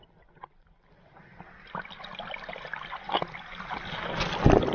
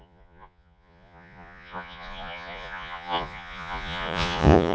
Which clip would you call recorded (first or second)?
first